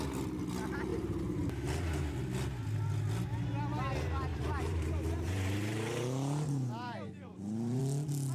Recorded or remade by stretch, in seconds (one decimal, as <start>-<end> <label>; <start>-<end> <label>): 0.0-0.9 recorded; 0.9-1.5 remade; 1.5-4.3 recorded; 4.3-7.8 remade; 7.8-8.3 recorded